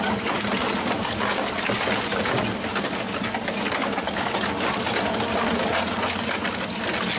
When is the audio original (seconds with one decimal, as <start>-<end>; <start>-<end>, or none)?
0.0-7.2